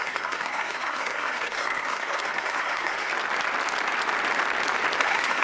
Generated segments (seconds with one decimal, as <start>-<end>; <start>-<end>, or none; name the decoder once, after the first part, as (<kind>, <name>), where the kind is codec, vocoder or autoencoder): 0.0-3.1 (codec, SNAC); 5.0-5.4